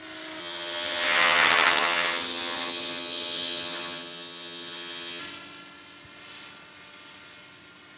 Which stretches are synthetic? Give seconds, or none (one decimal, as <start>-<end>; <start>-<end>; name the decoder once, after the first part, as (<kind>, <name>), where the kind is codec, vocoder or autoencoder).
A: 0.4-5.2 (vocoder, HiFi-GAN)